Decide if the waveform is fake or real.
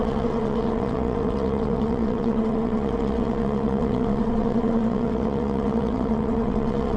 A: fake